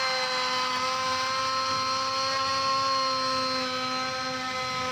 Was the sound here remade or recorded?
recorded